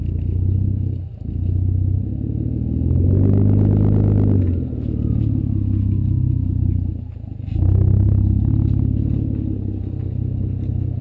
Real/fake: real